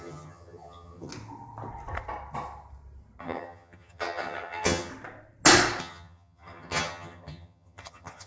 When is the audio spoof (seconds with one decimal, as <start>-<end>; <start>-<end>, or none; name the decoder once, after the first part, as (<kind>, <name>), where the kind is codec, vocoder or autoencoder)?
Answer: 0.0-1.1 (vocoder, HiFi-GAN); 3.2-4.9; 5.8-8.3